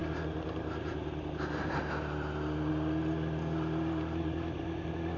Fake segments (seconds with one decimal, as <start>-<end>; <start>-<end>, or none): none